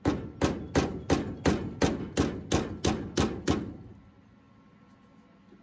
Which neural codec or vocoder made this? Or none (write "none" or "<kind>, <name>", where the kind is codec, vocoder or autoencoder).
none